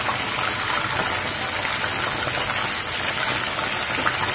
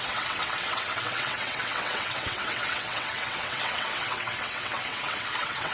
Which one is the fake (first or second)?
second